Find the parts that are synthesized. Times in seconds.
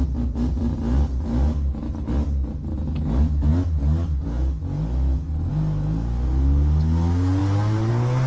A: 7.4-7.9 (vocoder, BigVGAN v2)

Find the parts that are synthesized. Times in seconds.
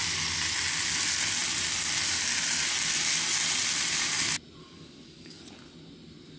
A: 4.6-5.4 (codec, DAC)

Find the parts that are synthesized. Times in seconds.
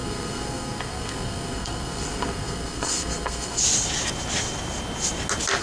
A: 0.0-3.6 (codec, SNAC)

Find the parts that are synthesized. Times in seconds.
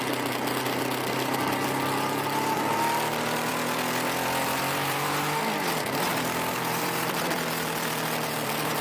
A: 3.5-8.8 (vocoder, BigVGAN v2)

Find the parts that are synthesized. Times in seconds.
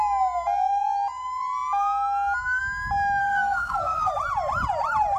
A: 3.2-4.1 (codec, SNAC)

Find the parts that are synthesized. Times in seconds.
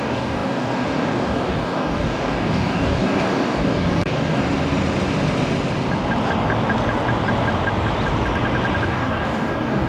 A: 0.0-4.4 (codec, DAC); 8.8-9.9